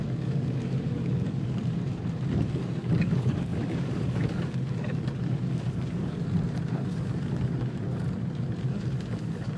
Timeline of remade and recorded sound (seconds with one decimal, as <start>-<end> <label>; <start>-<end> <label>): 0.0-6.2 remade; 6.2-6.7 recorded; 6.7-9.6 remade